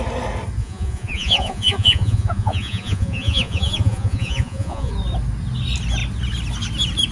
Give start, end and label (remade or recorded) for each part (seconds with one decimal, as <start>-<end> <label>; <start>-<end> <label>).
0.0-0.6 recorded; 0.6-4.9 remade; 4.9-7.1 recorded